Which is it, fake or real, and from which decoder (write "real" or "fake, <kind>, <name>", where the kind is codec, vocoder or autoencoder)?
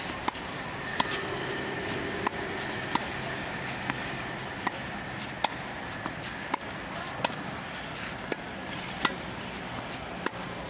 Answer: real